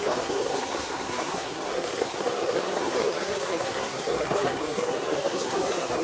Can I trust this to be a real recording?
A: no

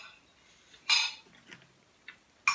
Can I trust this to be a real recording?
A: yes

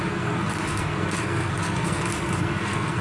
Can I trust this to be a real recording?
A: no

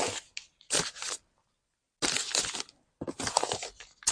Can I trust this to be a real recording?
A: yes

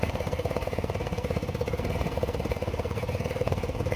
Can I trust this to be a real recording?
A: no